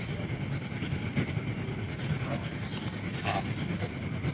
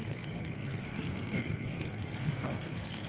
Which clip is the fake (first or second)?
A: second